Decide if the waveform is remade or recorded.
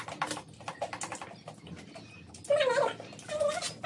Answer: recorded